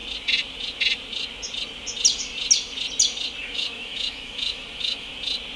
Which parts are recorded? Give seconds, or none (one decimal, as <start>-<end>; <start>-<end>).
0.0-3.4; 5.1-5.6